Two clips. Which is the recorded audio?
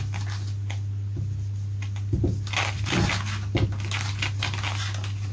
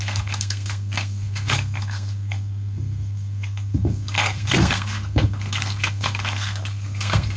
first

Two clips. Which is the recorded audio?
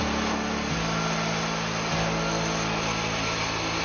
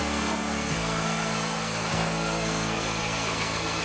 first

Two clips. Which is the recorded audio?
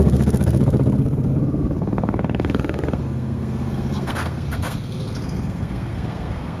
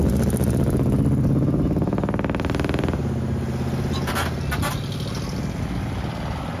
second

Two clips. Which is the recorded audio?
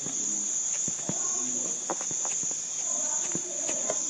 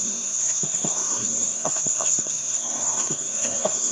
first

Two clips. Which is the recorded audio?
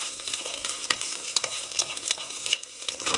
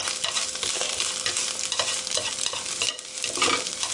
second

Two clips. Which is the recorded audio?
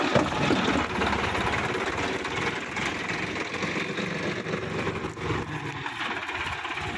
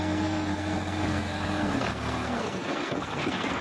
first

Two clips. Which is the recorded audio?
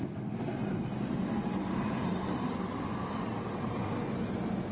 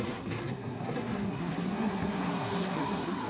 first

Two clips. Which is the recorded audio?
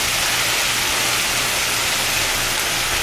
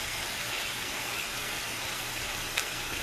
first